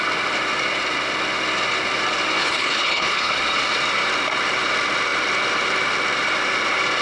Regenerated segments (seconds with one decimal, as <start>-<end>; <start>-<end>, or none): 2.4-3.3